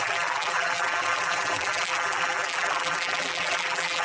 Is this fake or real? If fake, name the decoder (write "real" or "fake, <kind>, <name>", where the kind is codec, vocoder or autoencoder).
fake, vocoder, BigVGAN v2